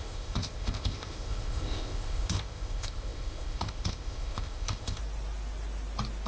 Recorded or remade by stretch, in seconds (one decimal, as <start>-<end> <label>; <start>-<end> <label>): 0.0-5.0 remade; 5.0-6.3 recorded